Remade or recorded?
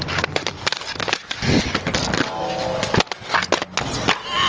recorded